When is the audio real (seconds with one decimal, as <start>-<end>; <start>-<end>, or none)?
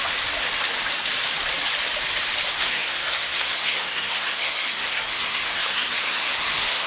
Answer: 0.0-2.5